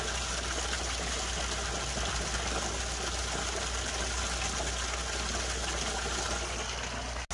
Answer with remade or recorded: recorded